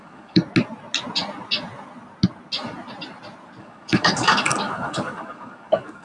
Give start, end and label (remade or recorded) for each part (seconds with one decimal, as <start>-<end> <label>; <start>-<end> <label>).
0.0-0.4 remade; 0.4-3.6 recorded; 3.6-6.0 remade